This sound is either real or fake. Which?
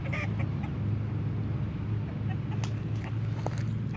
real